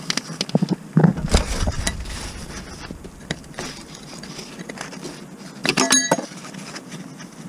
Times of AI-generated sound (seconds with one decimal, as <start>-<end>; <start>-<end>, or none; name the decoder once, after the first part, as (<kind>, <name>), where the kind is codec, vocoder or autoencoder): none